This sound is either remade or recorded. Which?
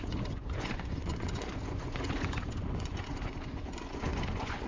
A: remade